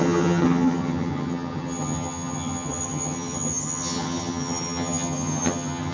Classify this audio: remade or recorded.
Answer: remade